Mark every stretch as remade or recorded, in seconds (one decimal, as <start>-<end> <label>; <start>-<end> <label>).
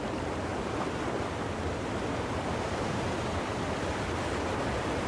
0.0-5.1 recorded